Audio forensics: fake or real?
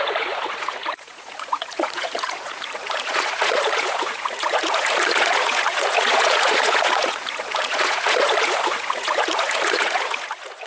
fake